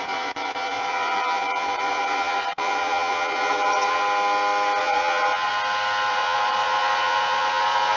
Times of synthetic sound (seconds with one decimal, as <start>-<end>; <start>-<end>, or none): 0.0-4.0; 4.8-5.5; 6.1-8.0